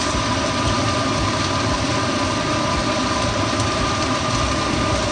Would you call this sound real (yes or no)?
no